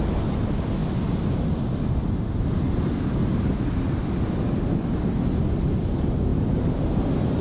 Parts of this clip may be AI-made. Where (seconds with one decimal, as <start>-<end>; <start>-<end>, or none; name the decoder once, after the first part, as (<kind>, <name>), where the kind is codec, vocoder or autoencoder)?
6.3-7.4 (vocoder, BigVGAN v2)

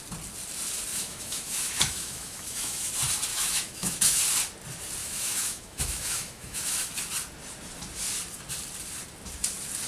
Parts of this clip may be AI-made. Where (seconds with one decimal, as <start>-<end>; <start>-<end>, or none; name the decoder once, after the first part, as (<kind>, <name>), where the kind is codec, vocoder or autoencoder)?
0.9-2.9 (autoencoder, DAC-VAE); 3.3-4.2; 5.0-6.9

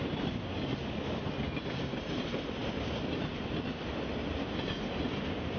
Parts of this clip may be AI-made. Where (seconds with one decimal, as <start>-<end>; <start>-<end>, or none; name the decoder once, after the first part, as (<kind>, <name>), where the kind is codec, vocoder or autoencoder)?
none

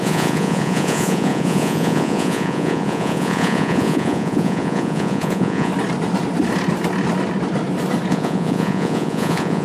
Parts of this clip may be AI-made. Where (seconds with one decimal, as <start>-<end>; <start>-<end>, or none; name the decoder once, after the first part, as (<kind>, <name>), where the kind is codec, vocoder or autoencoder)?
0.0-5.7 (vocoder, Vocos); 8.1-9.6

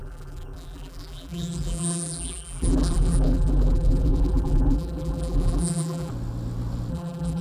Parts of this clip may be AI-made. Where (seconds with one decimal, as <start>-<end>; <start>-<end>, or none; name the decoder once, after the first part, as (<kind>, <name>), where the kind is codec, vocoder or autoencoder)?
0.0-6.1 (vocoder, BigVGAN v2); 6.9-7.4